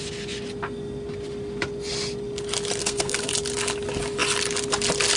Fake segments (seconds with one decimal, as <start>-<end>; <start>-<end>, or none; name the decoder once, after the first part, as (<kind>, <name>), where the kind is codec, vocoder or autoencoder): 2.8-3.3 (codec, SNAC)